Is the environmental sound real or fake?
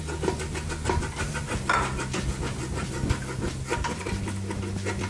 real